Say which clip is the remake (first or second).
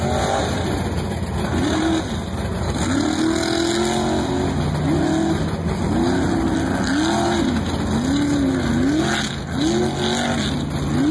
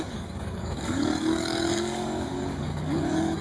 second